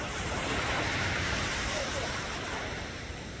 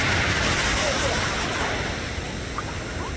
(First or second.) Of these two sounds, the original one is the second